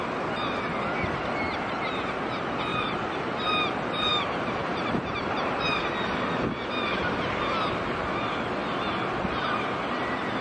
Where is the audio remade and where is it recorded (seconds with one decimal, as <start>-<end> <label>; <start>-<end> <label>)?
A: 0.0-2.7 recorded; 2.7-3.5 remade; 3.5-4.1 recorded; 4.1-5.6 remade; 5.6-10.4 recorded